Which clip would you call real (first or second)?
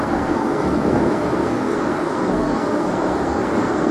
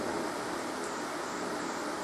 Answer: second